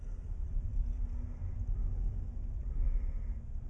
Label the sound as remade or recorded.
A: recorded